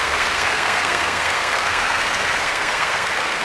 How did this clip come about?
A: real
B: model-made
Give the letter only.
B